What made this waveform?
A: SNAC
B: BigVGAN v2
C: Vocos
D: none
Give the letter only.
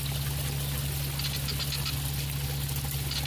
D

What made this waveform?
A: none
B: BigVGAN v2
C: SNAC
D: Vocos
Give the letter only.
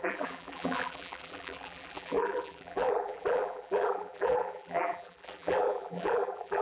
B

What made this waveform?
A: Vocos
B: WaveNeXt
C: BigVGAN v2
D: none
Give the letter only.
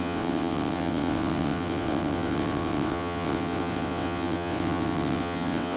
B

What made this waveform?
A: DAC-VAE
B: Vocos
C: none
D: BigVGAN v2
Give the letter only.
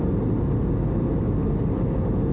C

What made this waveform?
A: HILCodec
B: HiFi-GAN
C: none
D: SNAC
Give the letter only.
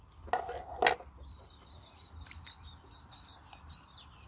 C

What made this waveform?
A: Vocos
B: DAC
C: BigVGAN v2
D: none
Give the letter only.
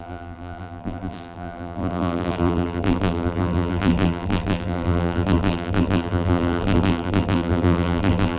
C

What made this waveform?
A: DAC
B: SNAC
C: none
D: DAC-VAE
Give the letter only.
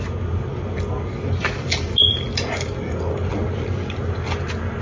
C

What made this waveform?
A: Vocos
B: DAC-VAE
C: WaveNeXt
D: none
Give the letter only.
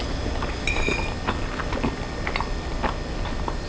D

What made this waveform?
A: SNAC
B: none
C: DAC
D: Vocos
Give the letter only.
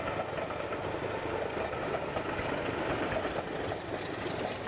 B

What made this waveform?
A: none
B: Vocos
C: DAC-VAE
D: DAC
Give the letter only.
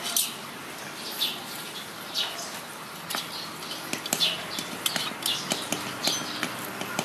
A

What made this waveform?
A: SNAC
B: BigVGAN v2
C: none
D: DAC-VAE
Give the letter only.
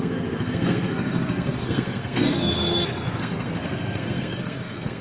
A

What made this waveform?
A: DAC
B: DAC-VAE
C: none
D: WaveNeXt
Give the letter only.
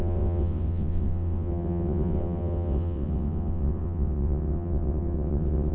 D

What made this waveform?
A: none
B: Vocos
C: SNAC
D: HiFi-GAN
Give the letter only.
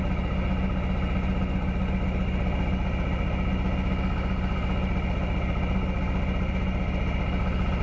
A